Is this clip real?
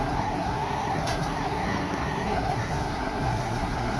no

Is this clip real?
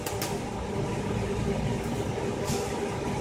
yes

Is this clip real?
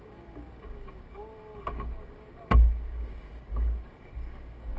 no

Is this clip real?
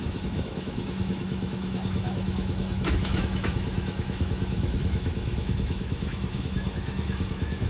no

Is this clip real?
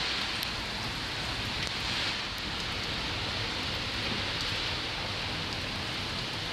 yes